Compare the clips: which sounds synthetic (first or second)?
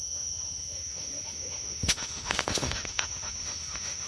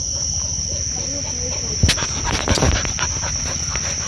first